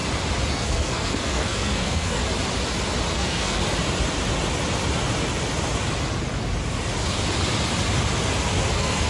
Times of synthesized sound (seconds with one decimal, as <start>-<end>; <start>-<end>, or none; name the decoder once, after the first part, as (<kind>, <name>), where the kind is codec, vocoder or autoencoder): 0.5-2.2 (codec, SNAC); 3.1-3.6; 8.7-9.1